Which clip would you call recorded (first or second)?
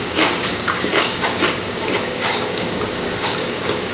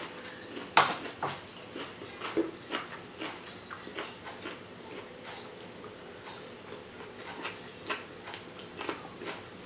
second